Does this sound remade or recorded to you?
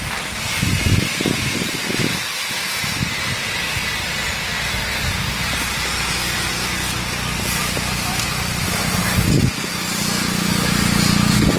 recorded